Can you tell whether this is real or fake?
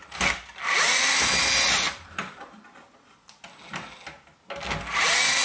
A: real